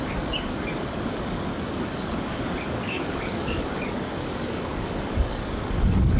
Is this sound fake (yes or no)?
yes